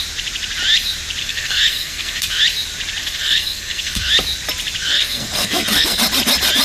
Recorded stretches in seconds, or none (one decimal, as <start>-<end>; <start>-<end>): 0.0-1.2; 2.4-3.0; 4.1-4.8; 6.0-6.6